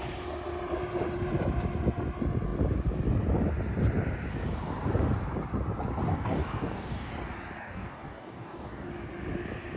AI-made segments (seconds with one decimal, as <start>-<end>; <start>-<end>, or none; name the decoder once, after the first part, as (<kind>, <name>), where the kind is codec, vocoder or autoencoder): 6.1-7.1 (codec, DAC); 7.6-8.9